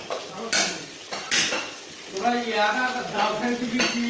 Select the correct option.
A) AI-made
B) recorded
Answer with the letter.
B